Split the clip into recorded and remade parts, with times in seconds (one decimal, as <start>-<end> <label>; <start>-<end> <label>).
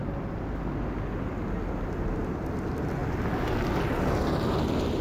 0.0-3.0 recorded; 3.0-3.5 remade; 3.5-5.0 recorded